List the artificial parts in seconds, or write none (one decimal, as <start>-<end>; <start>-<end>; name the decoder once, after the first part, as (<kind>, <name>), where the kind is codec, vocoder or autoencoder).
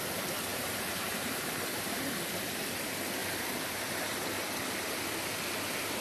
0.5-2.1 (vocoder, BigVGAN v2)